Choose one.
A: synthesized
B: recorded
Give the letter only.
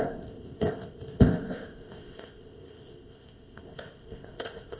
A